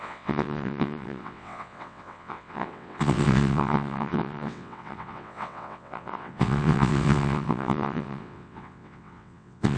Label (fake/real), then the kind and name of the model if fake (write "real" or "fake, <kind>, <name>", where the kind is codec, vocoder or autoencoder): fake, vocoder, WaveNeXt